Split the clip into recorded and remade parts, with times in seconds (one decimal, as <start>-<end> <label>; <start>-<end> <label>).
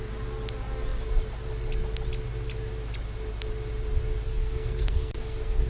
0.0-4.3 recorded; 4.3-5.7 remade